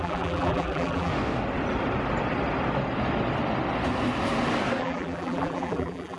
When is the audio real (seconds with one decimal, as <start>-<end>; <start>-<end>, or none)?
1.1-4.8